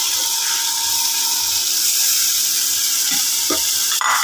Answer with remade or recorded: recorded